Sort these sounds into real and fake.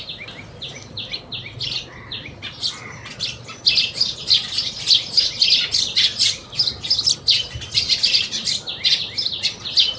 real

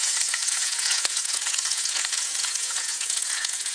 fake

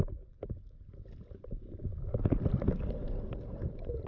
real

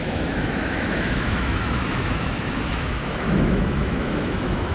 fake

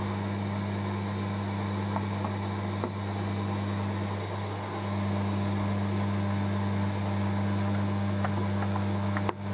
real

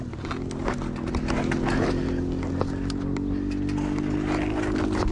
real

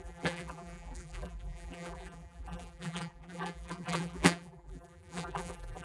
fake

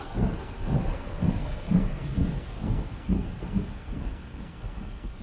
fake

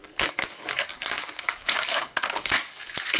fake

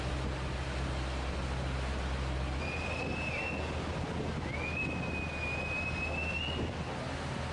real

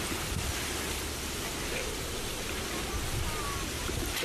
real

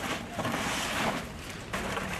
fake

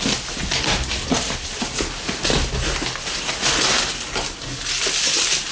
real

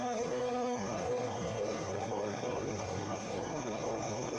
fake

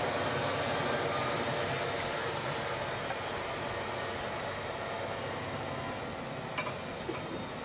real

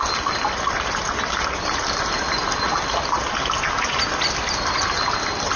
real